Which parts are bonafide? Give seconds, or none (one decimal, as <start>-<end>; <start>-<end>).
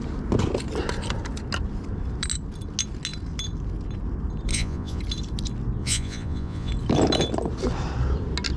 0.0-4.5; 5.0-5.8; 6.7-8.6